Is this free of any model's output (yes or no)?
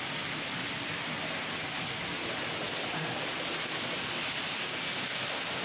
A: yes